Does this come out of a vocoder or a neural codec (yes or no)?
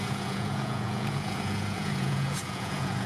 yes